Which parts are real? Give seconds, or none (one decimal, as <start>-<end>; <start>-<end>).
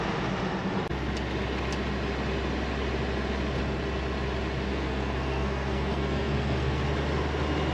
0.0-4.7; 6.9-7.7